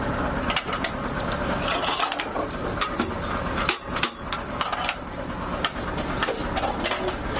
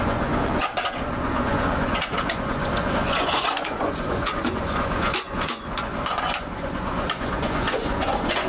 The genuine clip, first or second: first